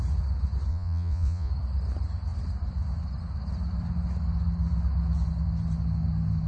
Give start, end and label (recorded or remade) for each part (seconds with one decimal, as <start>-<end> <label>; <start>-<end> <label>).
0.0-0.7 recorded; 0.7-1.5 remade; 1.5-6.5 recorded